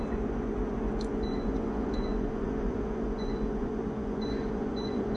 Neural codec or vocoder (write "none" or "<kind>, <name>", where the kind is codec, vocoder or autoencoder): vocoder, Vocos